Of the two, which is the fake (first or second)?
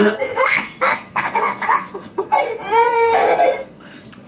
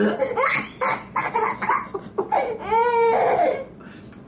first